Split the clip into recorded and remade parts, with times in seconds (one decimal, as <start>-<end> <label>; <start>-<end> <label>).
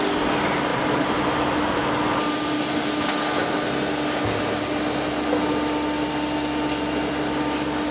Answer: 0.0-7.9 recorded